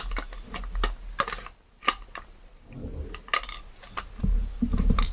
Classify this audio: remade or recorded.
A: recorded